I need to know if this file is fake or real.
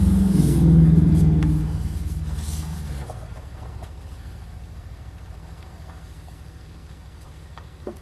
fake